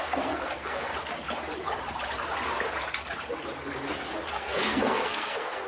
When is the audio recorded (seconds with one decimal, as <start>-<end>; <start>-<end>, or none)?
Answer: 0.9-4.3